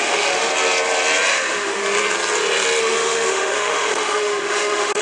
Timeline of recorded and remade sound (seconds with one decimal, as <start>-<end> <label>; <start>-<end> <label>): 0.0-0.5 remade; 0.5-1.3 recorded; 1.3-1.8 remade; 1.8-2.8 recorded; 2.8-5.0 remade

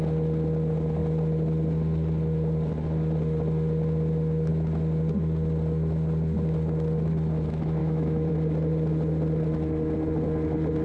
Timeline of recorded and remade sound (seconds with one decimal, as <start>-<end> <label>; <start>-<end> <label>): 0.0-7.8 recorded; 7.8-8.3 remade; 8.3-10.8 recorded

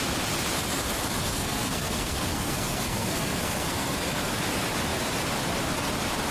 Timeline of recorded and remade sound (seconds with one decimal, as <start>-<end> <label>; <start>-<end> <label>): 0.0-1.3 recorded; 1.3-4.3 remade; 4.3-6.3 recorded